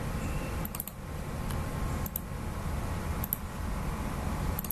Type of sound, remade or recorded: recorded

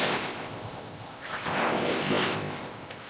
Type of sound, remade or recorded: remade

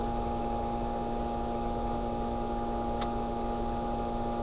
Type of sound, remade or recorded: recorded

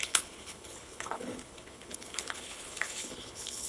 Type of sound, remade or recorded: remade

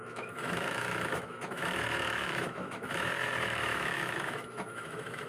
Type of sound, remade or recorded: remade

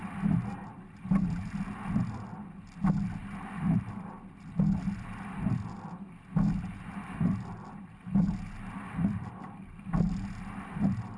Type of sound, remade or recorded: recorded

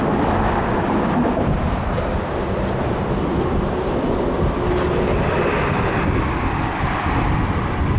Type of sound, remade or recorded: recorded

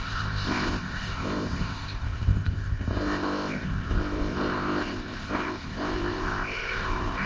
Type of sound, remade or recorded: remade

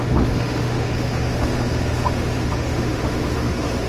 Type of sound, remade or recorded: remade